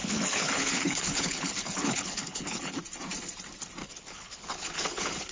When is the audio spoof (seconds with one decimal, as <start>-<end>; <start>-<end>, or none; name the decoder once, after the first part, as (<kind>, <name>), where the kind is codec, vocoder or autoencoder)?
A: 0.0-2.8 (codec, HILCodec); 3.8-5.3